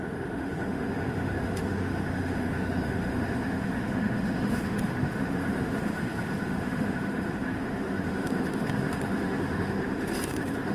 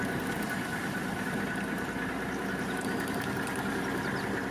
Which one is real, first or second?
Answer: second